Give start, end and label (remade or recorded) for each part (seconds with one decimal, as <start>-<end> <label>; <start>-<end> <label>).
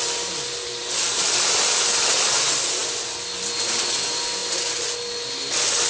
0.0-5.9 recorded